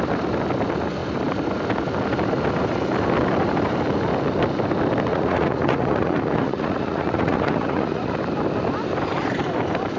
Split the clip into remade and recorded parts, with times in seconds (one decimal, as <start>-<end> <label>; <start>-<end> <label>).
0.0-5.1 recorded; 5.1-8.2 remade; 8.2-10.0 recorded